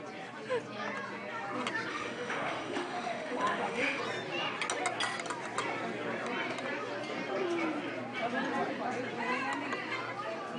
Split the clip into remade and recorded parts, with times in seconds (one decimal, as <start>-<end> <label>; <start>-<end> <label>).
0.0-1.9 recorded; 1.9-4.0 remade; 4.0-10.6 recorded